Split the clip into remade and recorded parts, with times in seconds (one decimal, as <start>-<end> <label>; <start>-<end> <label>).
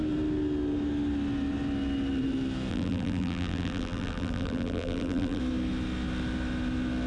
0.0-2.7 recorded; 2.7-5.4 remade; 5.4-7.1 recorded